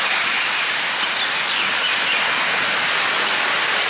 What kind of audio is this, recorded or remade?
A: recorded